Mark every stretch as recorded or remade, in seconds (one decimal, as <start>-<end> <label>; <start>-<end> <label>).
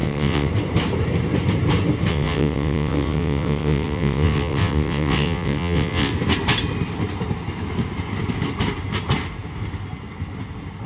0.0-0.5 remade; 0.5-2.1 recorded; 2.1-6.1 remade; 6.1-10.9 recorded